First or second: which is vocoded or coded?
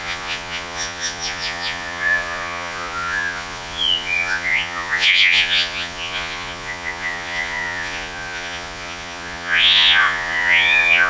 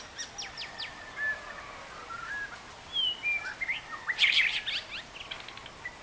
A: first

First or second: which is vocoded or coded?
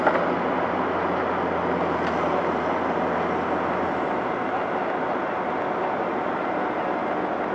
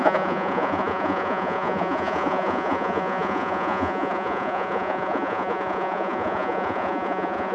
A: second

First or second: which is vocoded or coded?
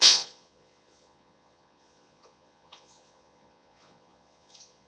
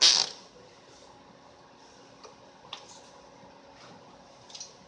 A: first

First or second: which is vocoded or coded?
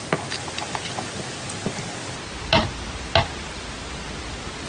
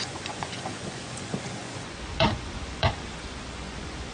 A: second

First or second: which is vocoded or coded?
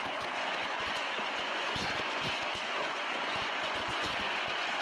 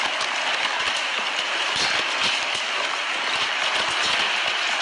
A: first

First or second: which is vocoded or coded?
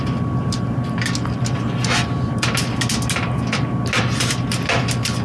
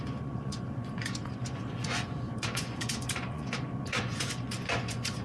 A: second